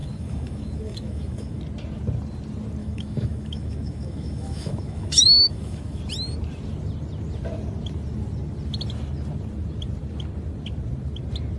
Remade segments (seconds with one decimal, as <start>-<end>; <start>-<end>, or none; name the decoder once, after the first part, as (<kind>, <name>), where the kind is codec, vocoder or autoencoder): 0.0-1.6 (autoencoder, DAC-VAE); 2.8-6.0